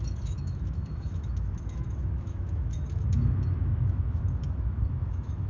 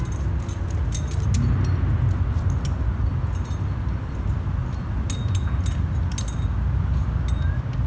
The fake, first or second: first